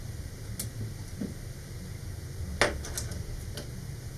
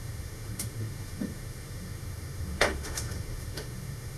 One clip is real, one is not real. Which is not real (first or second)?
second